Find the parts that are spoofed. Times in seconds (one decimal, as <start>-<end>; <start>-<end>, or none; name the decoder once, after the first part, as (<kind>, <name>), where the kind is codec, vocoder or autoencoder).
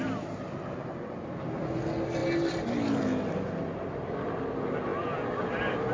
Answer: none